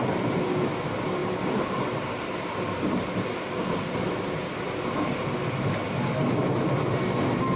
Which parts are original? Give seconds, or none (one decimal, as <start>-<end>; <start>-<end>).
0.0-1.2; 2.9-7.6

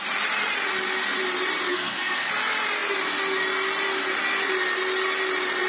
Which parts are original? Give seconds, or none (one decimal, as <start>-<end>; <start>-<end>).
0.0-1.7; 2.3-5.7

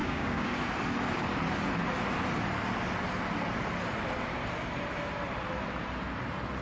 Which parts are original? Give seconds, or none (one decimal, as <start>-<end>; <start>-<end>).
0.6-6.6

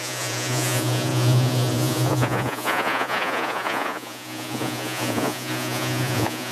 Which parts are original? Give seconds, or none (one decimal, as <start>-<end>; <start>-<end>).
none

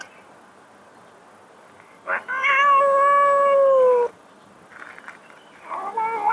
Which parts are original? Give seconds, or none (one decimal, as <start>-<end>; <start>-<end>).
0.0-6.3

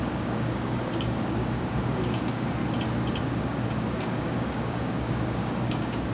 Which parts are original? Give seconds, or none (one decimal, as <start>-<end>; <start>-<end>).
2.6-3.2

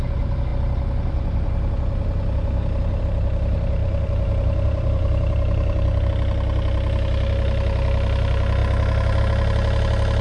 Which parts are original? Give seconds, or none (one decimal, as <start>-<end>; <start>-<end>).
0.0-3.8; 6.1-10.2